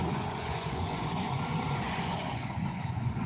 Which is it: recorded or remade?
remade